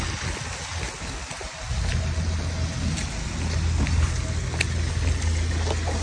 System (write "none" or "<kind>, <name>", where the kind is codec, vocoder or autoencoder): none